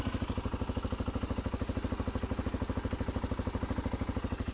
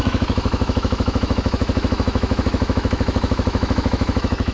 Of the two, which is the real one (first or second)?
first